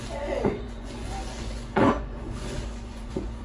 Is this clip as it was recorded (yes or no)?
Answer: no